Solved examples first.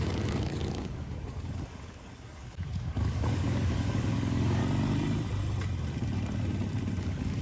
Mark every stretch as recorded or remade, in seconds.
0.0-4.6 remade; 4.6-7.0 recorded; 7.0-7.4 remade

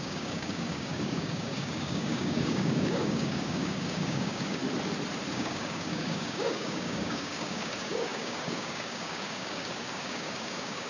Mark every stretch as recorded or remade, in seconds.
0.0-4.6 remade; 4.6-5.3 recorded; 5.3-10.9 remade

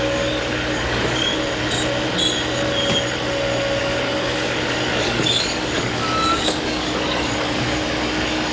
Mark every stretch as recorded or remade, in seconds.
0.0-1.3 remade; 1.3-3.8 recorded; 3.8-8.5 remade

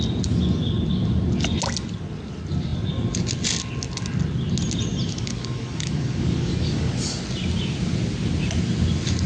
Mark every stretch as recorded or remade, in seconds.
0.0-5.1 recorded; 5.1-7.2 remade; 7.2-9.3 recorded